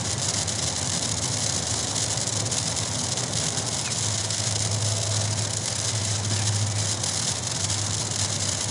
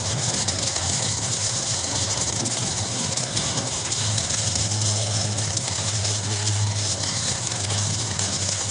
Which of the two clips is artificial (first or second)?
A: second